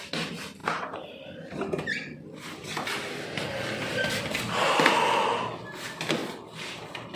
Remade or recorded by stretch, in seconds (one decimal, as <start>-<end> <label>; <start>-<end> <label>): 0.0-0.6 recorded; 0.6-4.9 remade; 4.9-6.2 recorded; 6.2-7.2 remade

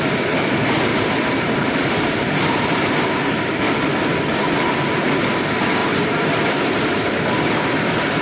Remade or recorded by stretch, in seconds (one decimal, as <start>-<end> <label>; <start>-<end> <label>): 0.0-0.9 recorded; 0.9-3.6 remade; 3.6-8.2 recorded

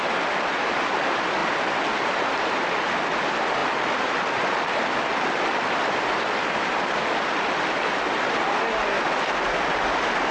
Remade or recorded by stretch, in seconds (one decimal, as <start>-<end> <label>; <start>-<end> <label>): 0.0-10.3 recorded